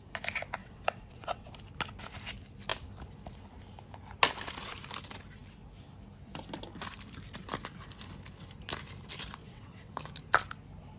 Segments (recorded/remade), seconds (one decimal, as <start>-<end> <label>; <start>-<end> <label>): 0.0-0.6 recorded; 0.6-1.5 remade; 1.5-9.4 recorded; 9.4-9.9 remade; 9.9-11.0 recorded